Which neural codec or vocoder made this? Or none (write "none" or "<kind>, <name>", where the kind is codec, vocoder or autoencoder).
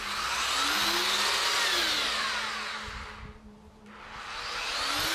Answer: none